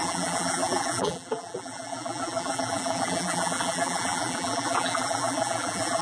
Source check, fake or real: fake